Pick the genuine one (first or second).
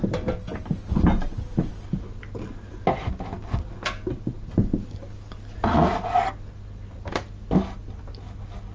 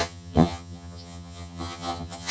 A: first